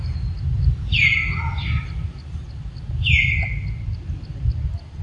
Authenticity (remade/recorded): recorded